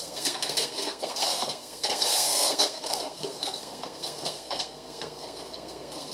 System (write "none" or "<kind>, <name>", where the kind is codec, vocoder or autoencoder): codec, SNAC